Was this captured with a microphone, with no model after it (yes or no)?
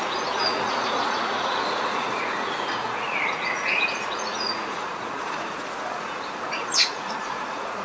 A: no